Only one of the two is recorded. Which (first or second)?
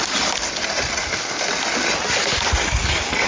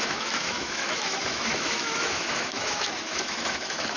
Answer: first